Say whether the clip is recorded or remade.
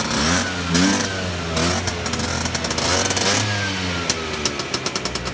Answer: recorded